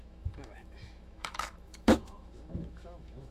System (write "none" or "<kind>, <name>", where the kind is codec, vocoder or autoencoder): autoencoder, DAC-VAE